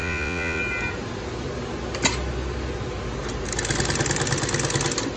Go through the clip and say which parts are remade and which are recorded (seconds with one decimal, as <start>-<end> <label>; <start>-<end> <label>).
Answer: 0.0-0.6 remade; 0.6-5.2 recorded